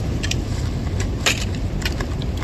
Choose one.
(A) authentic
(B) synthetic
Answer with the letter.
A